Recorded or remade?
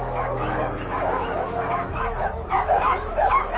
remade